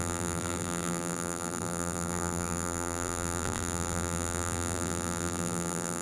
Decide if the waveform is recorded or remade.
remade